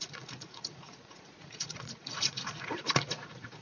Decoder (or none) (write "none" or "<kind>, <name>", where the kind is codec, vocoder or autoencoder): vocoder, Vocos